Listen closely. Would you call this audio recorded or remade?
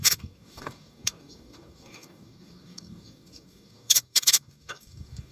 remade